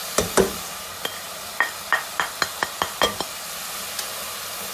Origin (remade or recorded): recorded